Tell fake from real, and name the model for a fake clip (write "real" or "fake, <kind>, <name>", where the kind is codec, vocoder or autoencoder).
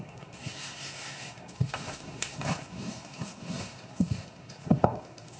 fake, codec, SNAC